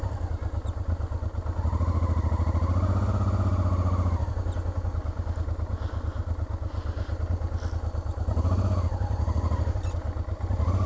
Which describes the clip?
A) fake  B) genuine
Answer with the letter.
B